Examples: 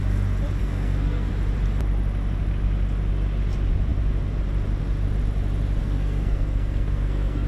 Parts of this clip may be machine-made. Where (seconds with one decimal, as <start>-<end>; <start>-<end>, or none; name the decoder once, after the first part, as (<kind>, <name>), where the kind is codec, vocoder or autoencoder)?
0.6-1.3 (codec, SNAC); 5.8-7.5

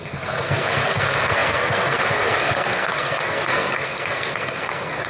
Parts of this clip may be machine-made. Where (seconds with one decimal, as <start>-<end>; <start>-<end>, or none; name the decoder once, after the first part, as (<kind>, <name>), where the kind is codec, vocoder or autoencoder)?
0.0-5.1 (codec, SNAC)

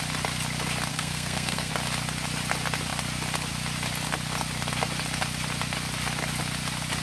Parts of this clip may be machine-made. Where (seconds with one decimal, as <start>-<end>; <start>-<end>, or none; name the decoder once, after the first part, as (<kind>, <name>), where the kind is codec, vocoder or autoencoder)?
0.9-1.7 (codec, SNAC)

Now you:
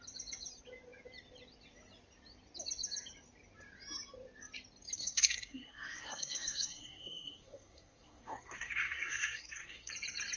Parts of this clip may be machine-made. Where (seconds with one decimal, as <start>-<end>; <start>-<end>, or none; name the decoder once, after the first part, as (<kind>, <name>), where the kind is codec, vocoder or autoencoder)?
5.0-9.9 (codec, SNAC)

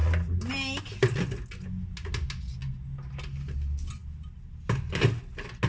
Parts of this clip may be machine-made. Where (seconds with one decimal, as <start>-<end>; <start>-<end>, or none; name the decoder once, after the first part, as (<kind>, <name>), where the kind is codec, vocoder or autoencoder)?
none

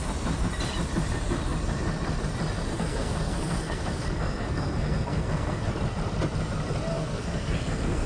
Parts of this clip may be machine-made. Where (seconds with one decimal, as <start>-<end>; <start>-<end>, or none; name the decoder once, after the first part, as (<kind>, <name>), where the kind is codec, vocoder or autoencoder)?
2.7-5.7 (codec, SNAC); 6.9-8.1

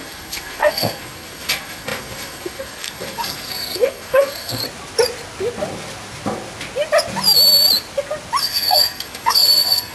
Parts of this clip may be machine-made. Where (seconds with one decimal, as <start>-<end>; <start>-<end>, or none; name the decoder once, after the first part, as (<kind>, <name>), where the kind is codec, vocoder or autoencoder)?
0.0-4.6 (codec, SNAC); 8.4-9.9